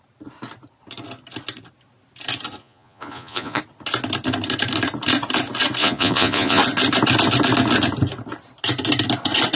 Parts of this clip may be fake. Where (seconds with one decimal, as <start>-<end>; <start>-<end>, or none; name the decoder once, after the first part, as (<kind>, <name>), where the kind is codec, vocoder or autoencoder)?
2.6-3.6 (vocoder, Vocos); 5.8-6.6